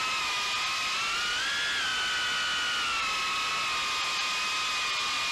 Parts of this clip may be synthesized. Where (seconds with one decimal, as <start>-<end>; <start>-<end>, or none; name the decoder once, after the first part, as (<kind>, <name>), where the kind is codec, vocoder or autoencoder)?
none